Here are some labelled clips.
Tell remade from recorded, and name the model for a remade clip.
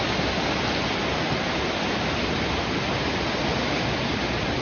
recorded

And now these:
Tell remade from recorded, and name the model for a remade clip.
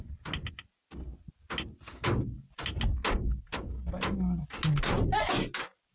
recorded